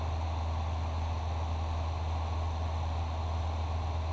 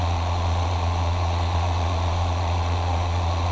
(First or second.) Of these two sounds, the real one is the first